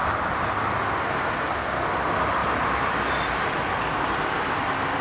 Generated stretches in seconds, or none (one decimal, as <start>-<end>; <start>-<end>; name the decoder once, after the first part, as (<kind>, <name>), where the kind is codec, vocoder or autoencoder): none